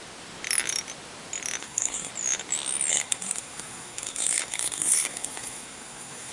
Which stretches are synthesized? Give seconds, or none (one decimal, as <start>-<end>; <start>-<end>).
1.6-2.1; 2.9-6.3